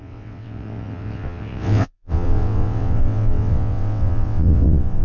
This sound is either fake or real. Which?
fake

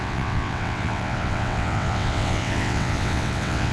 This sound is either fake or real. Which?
fake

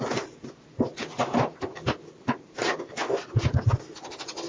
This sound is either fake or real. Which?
real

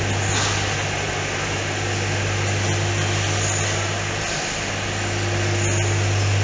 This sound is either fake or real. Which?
real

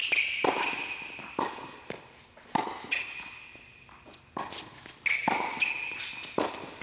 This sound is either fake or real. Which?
real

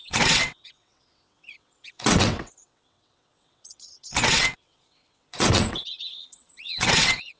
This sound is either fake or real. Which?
fake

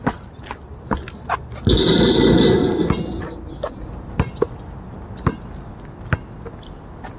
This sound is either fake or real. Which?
real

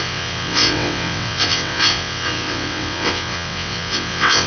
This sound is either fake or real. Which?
fake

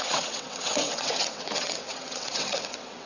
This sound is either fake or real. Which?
fake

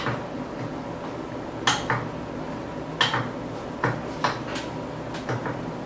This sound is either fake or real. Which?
real